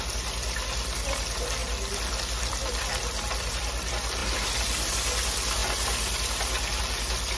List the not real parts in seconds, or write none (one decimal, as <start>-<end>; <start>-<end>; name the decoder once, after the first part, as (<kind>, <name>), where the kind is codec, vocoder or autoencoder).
none